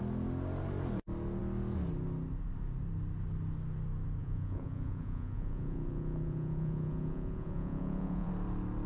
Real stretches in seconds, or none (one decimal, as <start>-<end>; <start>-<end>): 0.0-4.2; 8.3-8.9